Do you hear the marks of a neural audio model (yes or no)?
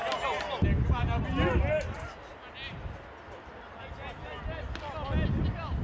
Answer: no